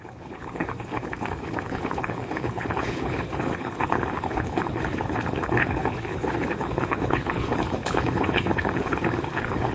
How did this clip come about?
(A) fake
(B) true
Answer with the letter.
A